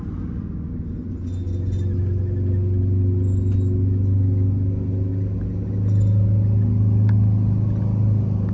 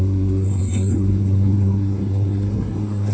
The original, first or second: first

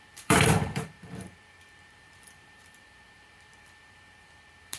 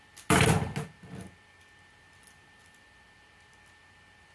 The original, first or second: second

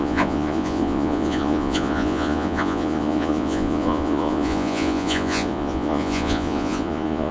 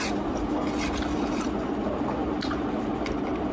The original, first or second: second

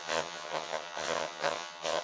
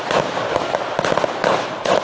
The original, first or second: second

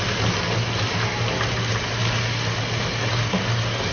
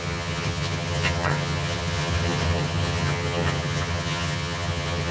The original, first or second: first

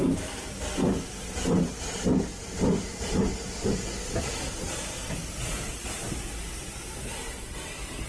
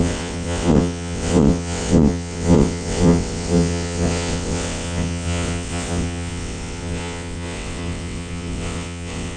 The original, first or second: first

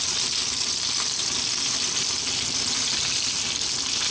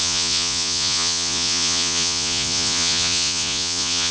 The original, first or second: first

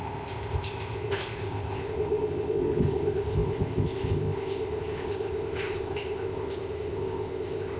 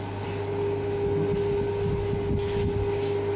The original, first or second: second